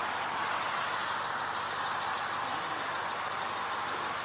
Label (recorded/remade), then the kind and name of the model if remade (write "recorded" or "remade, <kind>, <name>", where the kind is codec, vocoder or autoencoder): recorded